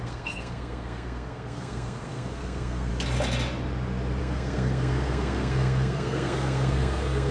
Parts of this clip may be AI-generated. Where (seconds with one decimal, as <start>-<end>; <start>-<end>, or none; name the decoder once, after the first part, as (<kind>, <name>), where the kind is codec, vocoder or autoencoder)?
0.0-2.9 (codec, SNAC); 4.2-7.3